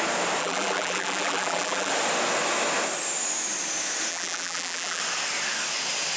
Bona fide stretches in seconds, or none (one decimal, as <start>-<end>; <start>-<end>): 0.0-0.4; 1.9-4.1; 5.0-6.2